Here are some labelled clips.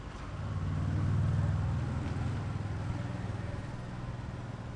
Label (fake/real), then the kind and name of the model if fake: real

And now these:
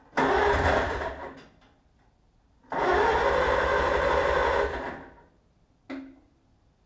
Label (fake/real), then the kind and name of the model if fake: real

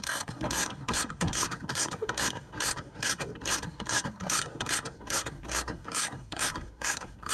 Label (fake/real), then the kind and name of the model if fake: fake, codec, SNAC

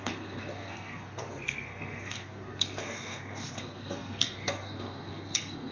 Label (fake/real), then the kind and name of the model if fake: fake, codec, SNAC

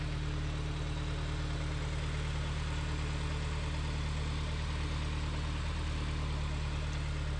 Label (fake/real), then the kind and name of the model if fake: real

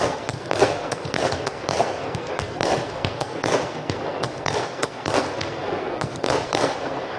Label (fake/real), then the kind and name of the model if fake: fake, codec, SNAC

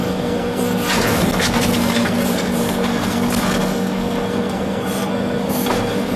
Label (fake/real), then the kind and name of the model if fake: fake, codec, SNAC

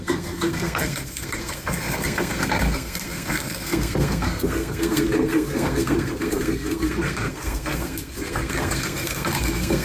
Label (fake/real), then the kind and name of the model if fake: fake, codec, SNAC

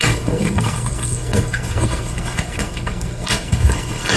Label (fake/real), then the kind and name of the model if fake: fake, codec, SNAC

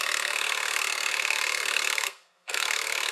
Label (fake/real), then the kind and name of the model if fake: fake, codec, SNAC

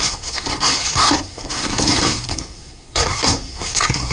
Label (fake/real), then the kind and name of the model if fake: fake, codec, SNAC